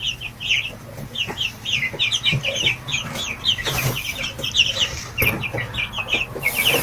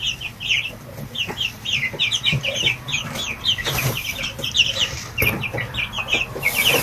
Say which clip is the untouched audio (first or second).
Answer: first